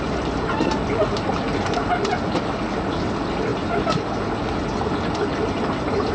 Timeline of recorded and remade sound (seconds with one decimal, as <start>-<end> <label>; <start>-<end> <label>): 0.0-6.1 recorded